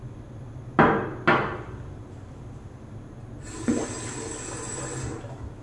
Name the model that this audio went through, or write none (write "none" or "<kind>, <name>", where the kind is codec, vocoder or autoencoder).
none